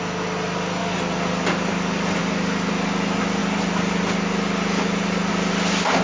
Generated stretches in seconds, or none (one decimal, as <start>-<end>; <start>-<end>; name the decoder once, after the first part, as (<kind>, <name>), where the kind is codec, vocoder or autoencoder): none